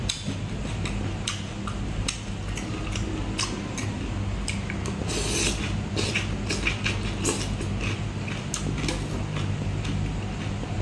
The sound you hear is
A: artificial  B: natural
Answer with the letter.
B